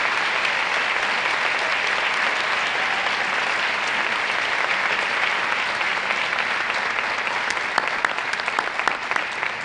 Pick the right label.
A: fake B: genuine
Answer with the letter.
B